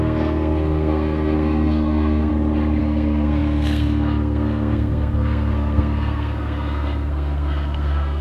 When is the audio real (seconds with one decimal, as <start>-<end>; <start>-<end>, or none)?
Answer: 2.3-2.8